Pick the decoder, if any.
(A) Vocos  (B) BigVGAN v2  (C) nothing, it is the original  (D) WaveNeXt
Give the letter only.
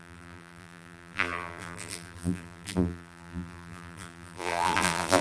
B